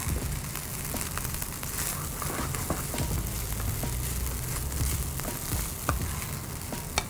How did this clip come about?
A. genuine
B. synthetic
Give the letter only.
A